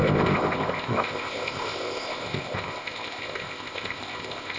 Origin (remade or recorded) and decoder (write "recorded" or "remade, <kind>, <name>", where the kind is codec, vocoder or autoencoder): remade, codec, ZipCodec